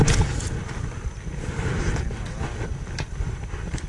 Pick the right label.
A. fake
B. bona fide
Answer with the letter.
B